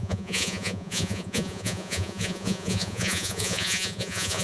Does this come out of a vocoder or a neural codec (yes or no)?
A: yes